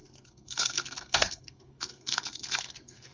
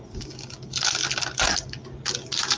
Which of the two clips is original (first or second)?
second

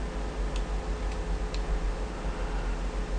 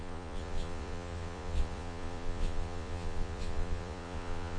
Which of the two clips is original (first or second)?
first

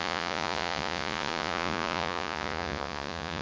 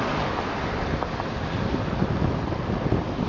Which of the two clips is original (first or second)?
second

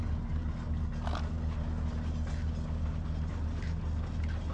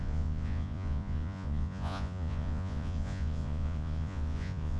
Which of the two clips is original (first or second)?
first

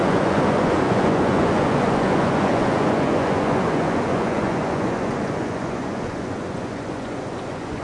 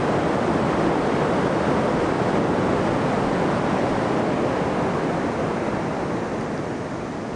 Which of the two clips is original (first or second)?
second